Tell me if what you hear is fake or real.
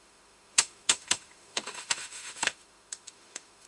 fake